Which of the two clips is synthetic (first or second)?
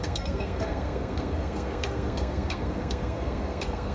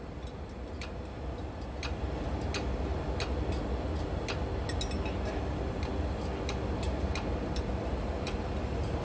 first